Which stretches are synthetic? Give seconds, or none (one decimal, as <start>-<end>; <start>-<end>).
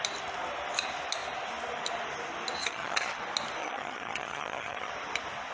2.6-3.2; 3.6-4.9